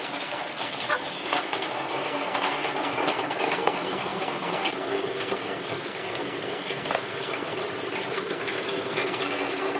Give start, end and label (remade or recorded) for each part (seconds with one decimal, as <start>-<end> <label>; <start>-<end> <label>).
0.0-7.6 remade; 7.6-8.1 recorded; 8.1-9.8 remade